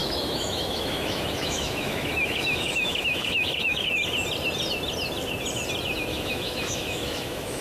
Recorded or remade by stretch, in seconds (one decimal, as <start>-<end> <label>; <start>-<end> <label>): 0.0-3.9 remade; 3.9-6.1 recorded; 6.1-7.6 remade